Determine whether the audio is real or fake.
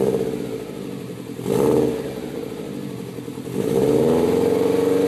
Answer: fake